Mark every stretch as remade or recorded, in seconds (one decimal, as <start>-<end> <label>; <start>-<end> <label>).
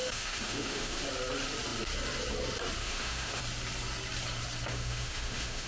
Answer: 0.0-1.0 remade; 1.0-2.8 recorded; 2.8-3.4 remade; 3.4-4.7 recorded; 4.7-5.7 remade